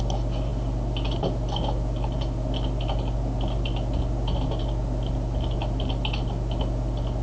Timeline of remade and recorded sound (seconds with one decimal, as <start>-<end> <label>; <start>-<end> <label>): 0.0-7.2 recorded